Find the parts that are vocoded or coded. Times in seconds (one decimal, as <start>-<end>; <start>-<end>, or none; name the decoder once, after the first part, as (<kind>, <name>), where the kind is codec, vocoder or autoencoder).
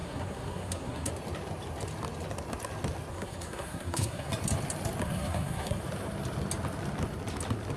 0.0-1.1 (codec, SNAC); 3.1-4.3; 5.0-5.8